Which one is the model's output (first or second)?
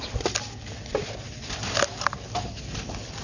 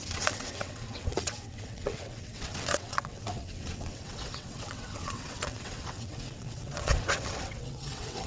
second